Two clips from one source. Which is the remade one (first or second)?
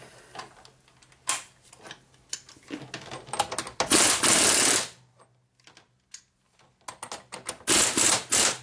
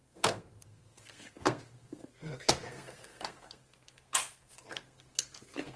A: second